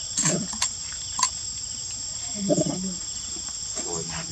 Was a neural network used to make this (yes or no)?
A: no